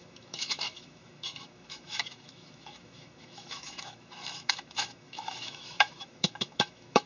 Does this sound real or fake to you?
fake